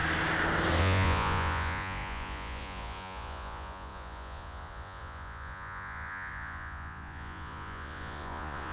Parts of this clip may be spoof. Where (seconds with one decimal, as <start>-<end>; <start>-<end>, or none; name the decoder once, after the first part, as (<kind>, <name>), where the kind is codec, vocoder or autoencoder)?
0.8-8.7 (vocoder, Vocos)